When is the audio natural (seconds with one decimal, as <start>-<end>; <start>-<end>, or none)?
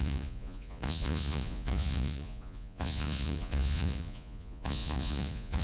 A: none